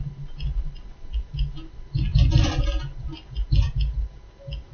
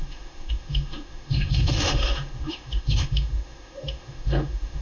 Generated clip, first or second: second